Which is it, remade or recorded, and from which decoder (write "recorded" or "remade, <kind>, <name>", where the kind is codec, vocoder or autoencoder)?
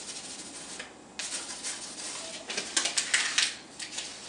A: recorded